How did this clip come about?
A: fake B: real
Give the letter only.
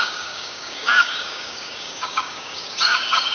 A